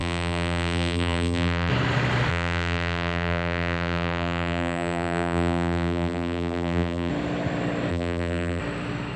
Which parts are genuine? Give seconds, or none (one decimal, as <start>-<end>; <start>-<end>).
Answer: 1.7-2.3; 7.1-7.9; 8.6-9.2